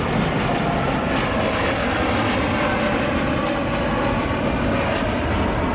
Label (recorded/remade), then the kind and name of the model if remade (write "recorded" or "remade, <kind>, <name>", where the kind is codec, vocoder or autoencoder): recorded